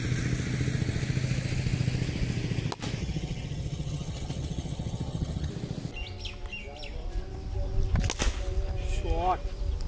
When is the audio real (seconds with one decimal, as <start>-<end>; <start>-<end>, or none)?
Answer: 0.0-3.0; 5.5-9.9